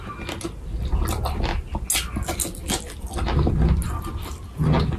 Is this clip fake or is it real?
real